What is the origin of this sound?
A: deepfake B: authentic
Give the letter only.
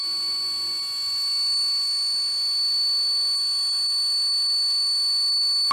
B